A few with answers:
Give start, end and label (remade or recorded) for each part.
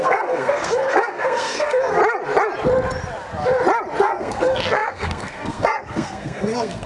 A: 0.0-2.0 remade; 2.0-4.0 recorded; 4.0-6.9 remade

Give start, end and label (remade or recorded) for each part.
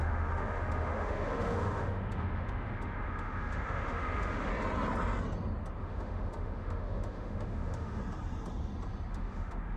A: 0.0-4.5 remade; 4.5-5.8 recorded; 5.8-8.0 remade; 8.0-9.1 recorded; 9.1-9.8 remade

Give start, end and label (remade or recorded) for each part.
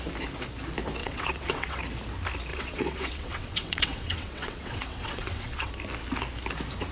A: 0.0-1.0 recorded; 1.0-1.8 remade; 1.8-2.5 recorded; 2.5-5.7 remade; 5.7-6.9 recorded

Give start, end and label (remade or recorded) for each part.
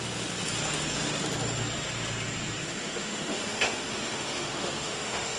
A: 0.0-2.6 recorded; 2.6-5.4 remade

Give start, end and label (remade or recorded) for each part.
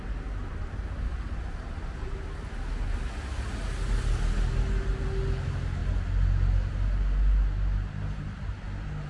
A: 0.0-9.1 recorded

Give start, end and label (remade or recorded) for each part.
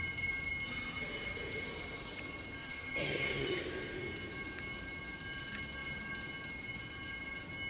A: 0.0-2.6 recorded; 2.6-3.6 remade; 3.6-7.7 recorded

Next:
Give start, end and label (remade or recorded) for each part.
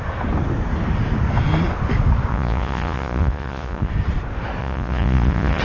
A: 0.0-2.3 recorded; 2.3-3.9 remade; 3.9-4.6 recorded; 4.6-5.6 remade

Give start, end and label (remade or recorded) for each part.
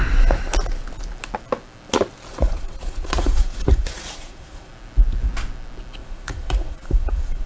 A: 0.0-2.3 recorded; 2.3-4.7 remade; 4.7-6.0 recorded; 6.0-7.5 remade